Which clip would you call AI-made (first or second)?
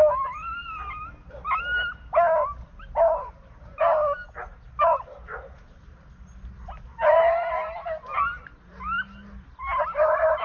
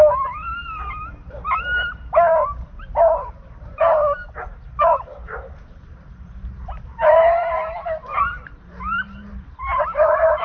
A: second